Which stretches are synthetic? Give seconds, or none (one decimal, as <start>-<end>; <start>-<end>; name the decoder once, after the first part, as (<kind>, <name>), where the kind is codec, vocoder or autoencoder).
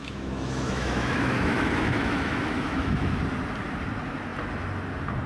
0.0-3.2 (autoencoder, DAC-VAE)